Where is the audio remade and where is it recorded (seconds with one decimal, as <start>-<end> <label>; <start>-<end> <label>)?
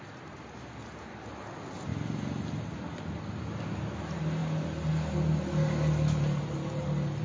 0.0-7.2 recorded